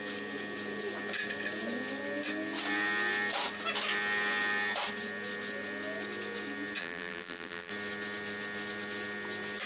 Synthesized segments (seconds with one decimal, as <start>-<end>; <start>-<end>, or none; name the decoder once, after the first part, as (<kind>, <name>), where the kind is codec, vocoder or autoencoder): 6.8-7.7 (vocoder, BigVGAN v2)